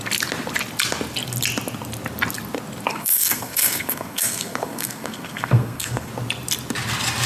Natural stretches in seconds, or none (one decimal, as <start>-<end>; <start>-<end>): 0.0-2.9; 6.1-7.3